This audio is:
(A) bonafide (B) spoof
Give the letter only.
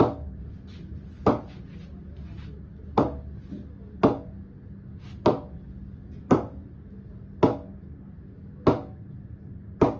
A